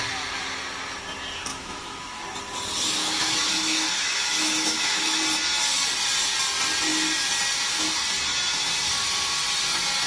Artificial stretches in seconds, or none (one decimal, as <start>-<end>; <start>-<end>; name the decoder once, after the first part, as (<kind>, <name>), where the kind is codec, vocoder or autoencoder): 1.5-2.2 (autoencoder, DAC-VAE); 3.0-5.2